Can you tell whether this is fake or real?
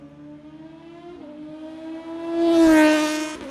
real